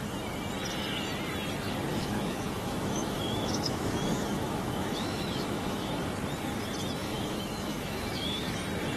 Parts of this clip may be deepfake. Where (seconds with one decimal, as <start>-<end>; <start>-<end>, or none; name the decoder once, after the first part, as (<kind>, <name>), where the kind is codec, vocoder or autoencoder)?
1.9-5.9 (autoencoder, DAC-VAE); 7.0-8.6